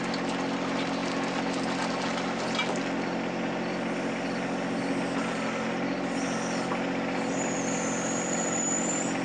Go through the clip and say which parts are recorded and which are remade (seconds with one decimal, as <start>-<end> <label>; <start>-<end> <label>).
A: 0.0-9.2 recorded